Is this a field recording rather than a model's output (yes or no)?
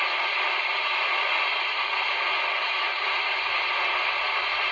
yes